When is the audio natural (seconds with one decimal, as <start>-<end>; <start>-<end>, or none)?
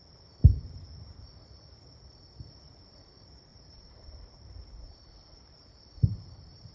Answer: 0.0-0.4; 1.2-3.5